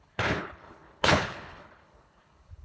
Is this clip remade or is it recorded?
remade